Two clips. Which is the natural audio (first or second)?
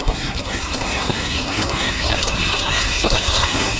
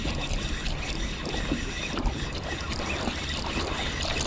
second